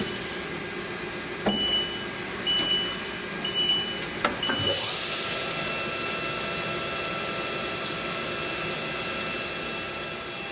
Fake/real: real